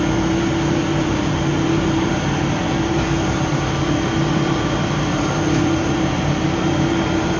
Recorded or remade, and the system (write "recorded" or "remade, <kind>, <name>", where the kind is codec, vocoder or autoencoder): remade, vocoder, BigVGAN v2